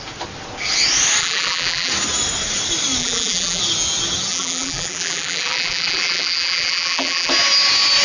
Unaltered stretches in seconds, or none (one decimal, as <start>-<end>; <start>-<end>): 0.0-1.2; 1.9-3.0; 3.6-4.3; 7.3-8.0